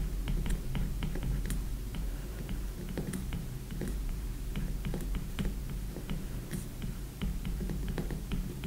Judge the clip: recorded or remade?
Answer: remade